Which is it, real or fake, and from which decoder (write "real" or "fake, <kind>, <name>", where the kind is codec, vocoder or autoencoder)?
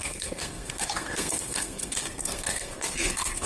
fake, codec, SNAC